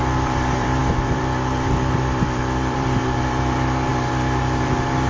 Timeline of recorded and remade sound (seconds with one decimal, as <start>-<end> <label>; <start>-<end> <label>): 0.0-5.1 remade